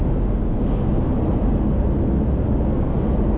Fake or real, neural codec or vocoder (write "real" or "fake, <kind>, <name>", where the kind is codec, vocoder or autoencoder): real